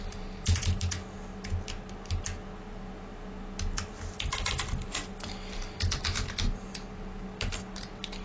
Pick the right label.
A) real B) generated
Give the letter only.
A